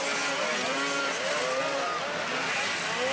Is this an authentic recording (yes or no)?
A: yes